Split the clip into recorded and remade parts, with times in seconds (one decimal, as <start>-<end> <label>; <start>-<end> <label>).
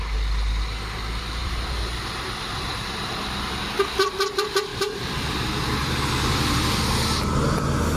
0.0-1.4 recorded; 1.4-3.7 remade; 3.7-4.7 recorded; 4.7-6.8 remade; 6.8-8.0 recorded